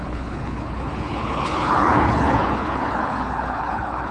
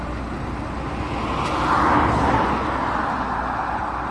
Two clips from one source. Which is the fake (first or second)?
first